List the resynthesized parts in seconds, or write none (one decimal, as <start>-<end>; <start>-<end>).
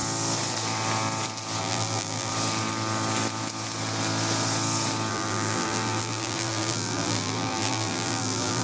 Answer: 1.6-2.3; 5.1-8.6